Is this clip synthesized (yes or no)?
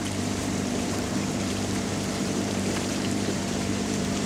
yes